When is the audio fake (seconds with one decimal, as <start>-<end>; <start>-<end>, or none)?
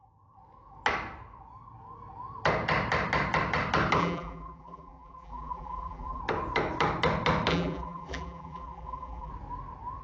4.0-6.2; 7.5-9.3